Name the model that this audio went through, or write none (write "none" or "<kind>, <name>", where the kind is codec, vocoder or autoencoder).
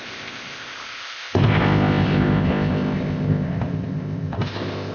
codec, ZipCodec